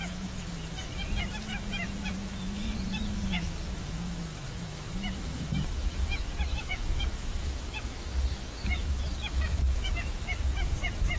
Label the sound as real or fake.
fake